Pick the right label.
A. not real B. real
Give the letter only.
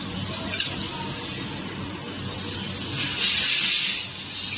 B